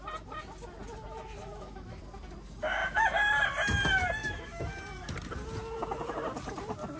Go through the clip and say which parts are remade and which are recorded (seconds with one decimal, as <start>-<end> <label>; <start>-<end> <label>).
0.0-1.4 recorded; 1.4-2.0 remade; 2.0-4.2 recorded; 4.2-4.7 remade; 4.7-7.0 recorded